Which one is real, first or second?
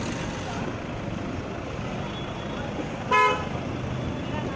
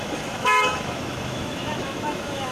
first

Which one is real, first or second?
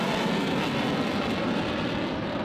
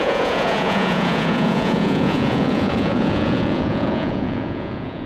first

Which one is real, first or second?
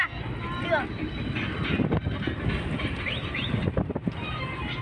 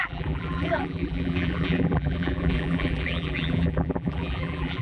first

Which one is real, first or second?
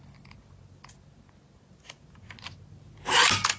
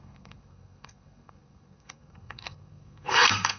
first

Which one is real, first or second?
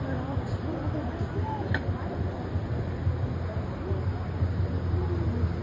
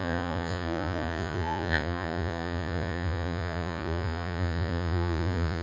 first